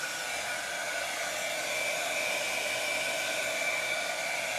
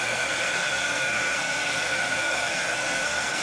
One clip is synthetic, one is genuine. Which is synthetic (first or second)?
second